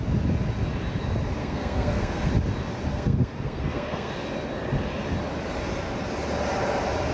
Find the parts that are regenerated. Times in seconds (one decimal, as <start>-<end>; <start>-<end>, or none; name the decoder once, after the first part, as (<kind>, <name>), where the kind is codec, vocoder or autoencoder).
1.4-2.3 (codec, SNAC); 2.9-4.1